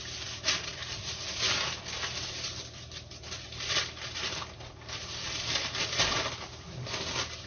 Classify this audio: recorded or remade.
remade